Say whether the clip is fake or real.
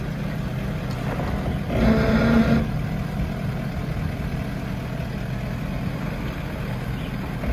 real